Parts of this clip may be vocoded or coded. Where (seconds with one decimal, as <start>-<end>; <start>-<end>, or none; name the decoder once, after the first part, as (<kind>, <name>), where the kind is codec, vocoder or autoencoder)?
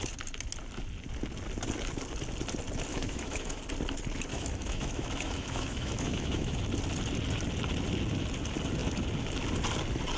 2.9-3.6 (autoencoder, DAC-VAE); 4.3-6.6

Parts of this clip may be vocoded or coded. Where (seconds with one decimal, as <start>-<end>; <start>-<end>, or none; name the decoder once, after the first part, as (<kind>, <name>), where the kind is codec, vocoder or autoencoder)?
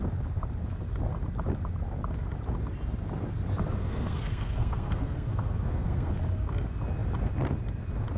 3.8-6.1 (codec, SNAC)